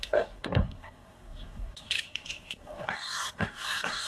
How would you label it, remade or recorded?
remade